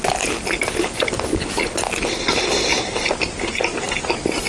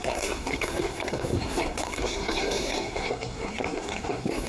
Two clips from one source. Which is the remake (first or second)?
second